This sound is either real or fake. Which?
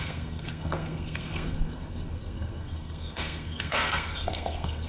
fake